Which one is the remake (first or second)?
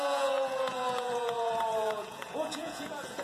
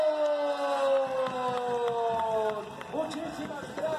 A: first